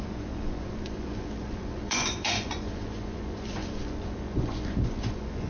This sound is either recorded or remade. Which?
remade